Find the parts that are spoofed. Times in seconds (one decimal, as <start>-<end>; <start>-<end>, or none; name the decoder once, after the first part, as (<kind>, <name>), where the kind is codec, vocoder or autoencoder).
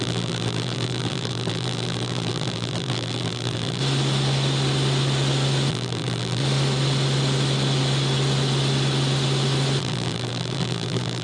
0.0-3.8 (vocoder, BigVGAN v2); 5.7-6.4; 9.8-11.2